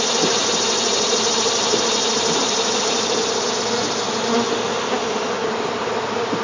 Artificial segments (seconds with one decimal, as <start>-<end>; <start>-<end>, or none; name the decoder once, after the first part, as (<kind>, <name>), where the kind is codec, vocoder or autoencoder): 0.4-3.2 (vocoder, BigVGAN v2); 5.4-6.4